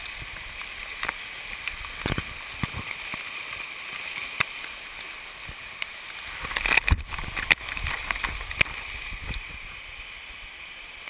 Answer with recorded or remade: recorded